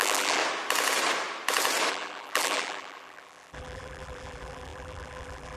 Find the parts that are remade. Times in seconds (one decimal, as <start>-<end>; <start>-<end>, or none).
0.0-0.4; 1.9-5.6

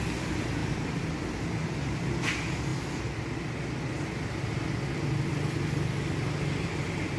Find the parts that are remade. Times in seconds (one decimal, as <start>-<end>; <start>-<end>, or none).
0.6-1.2

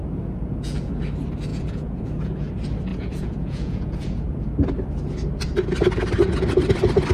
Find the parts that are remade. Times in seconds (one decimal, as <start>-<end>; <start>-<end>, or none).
0.0-0.9; 1.5-2.5; 2.9-4.5

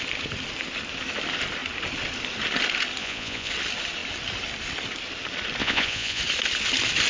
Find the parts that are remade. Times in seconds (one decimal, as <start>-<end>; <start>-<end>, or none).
3.0-3.5; 5.6-6.2